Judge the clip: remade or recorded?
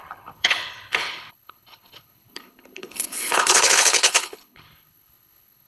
remade